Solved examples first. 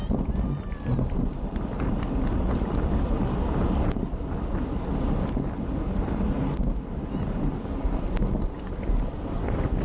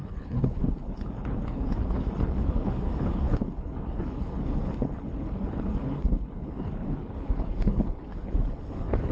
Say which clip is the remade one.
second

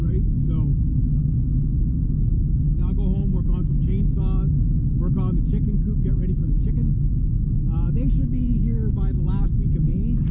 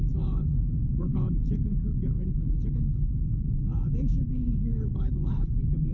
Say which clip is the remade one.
second